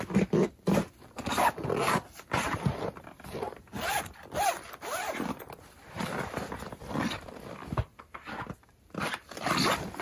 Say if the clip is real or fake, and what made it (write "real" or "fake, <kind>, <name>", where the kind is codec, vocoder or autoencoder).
fake, vocoder, BigVGAN v2